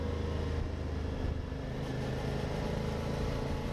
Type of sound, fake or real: real